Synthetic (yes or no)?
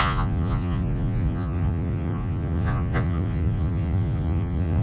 yes